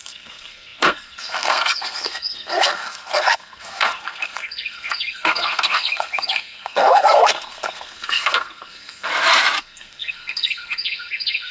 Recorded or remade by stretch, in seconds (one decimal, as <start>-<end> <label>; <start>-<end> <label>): 0.0-9.1 remade; 9.1-9.6 recorded; 9.6-11.5 remade